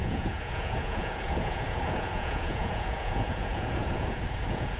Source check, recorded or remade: remade